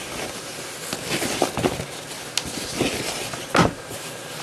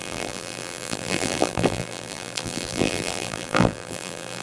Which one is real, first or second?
first